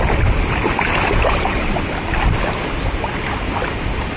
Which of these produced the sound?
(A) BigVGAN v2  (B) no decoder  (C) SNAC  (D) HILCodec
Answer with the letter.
B